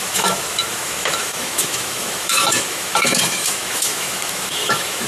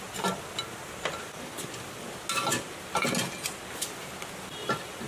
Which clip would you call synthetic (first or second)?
first